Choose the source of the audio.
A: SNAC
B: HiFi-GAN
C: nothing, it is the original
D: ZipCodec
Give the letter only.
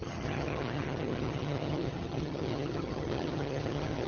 B